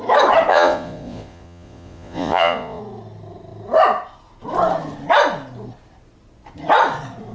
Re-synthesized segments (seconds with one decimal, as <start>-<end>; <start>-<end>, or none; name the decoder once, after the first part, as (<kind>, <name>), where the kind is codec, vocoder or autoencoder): 0.5-2.8 (vocoder, Vocos)